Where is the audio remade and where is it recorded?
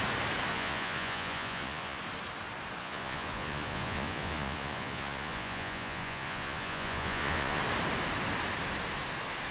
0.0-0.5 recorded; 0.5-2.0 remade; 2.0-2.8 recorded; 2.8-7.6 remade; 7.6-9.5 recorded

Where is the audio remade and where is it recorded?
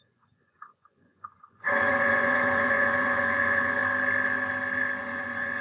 0.0-3.8 remade; 3.8-5.0 recorded; 5.0-5.6 remade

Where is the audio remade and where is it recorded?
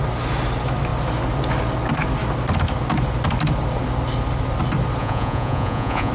0.0-5.0 recorded; 5.0-6.1 remade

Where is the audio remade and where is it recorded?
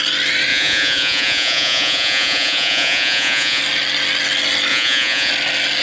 0.0-0.5 recorded; 0.5-3.6 remade; 3.6-4.7 recorded; 4.7-5.3 remade; 5.3-5.8 recorded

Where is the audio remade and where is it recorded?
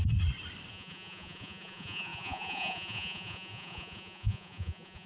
0.0-0.7 recorded; 0.7-5.1 remade